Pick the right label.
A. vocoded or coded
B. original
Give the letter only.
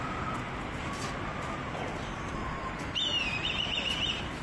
B